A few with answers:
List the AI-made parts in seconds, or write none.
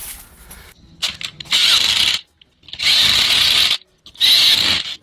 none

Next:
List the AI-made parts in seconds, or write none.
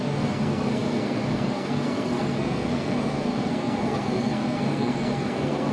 0.0-5.7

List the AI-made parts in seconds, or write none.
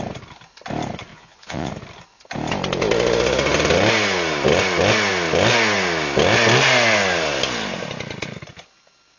1.1-1.7